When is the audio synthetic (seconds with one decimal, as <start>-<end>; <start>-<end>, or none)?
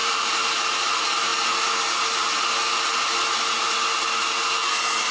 0.0-0.6